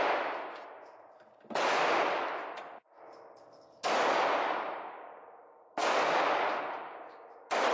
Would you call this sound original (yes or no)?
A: yes